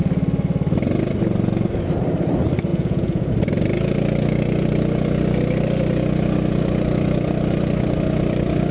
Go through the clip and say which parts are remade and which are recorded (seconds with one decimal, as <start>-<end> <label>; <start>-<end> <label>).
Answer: 0.0-2.7 recorded; 2.7-3.3 remade; 3.3-8.7 recorded